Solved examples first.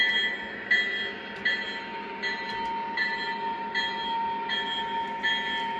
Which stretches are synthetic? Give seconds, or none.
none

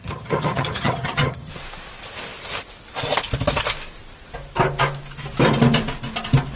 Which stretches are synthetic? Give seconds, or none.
0.0-1.5 (vocoder, HiFi-GAN)

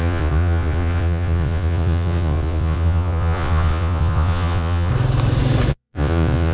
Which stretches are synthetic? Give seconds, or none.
0.0-4.9 (vocoder, Vocos); 5.7-6.5

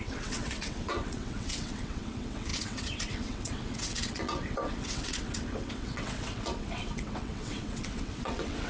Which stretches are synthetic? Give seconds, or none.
0.0-8.7 (vocoder, WaveNeXt)

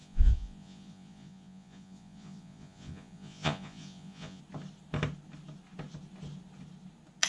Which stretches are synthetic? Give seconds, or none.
0.0-4.4 (vocoder, Vocos)

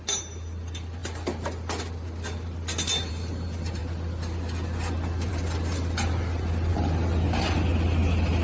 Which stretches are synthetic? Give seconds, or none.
none

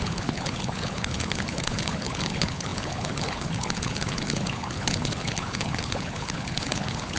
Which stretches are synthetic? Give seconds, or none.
0.0-7.2 (codec, HILCodec)